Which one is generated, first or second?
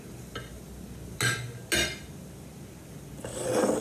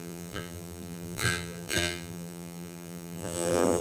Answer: second